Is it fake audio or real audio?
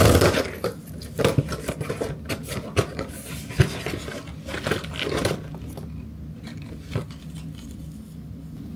real